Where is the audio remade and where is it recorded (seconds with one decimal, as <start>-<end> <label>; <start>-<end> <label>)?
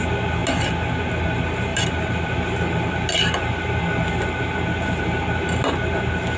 0.0-6.4 recorded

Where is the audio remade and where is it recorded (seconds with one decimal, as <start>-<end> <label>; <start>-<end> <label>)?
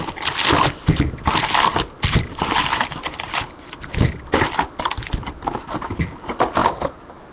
0.0-6.6 remade; 6.6-7.3 recorded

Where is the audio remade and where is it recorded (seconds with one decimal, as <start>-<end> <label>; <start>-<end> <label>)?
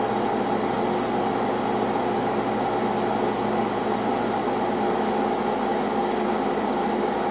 0.0-7.3 recorded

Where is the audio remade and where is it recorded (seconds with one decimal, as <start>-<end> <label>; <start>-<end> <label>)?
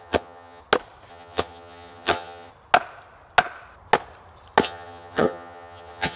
0.0-0.6 remade; 0.6-1.1 recorded; 1.1-2.5 remade; 2.5-4.6 recorded; 4.6-6.2 remade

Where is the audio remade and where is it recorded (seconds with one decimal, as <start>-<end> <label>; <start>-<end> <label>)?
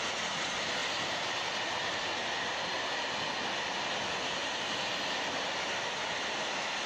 0.0-6.9 recorded